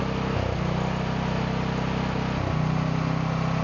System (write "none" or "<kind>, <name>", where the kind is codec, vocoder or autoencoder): none